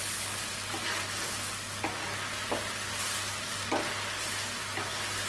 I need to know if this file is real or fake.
real